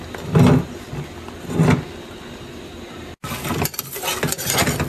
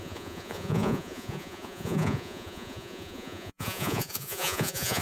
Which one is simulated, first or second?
second